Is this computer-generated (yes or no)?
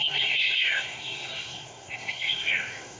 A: yes